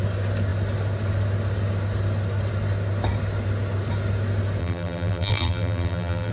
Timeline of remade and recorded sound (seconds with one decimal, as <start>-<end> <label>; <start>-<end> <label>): 0.0-4.6 recorded; 4.6-6.3 remade